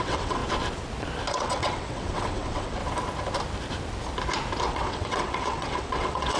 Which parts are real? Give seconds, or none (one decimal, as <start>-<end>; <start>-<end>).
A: 0.4-1.3; 2.8-4.7